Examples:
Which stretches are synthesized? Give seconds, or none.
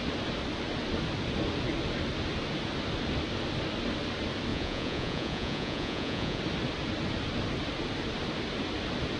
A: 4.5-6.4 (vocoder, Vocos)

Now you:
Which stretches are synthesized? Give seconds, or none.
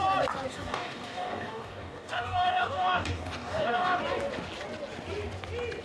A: 0.5-4.0 (codec, DAC)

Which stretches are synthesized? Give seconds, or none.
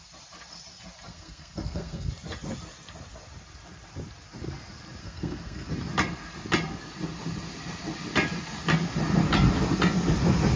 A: 1.1-2.1 (codec, SNAC); 5.0-5.7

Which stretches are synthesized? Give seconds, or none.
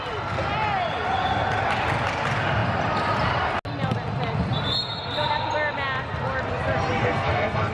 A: 7.0-7.7 (codec, SNAC)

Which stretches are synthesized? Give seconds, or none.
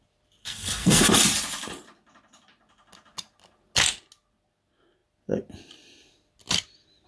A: 0.4-1.1 (codec, SNAC)